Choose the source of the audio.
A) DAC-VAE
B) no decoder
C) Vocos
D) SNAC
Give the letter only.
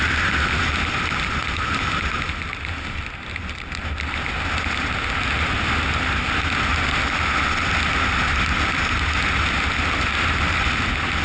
B